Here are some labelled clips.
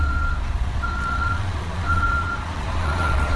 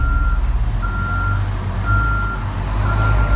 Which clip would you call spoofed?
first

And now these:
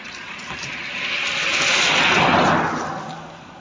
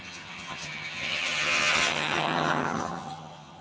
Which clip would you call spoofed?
second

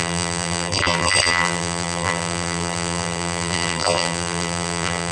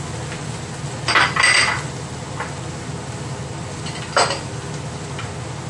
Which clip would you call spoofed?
first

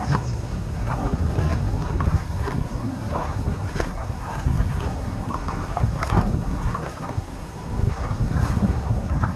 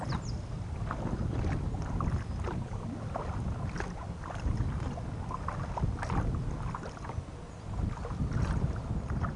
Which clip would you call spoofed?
first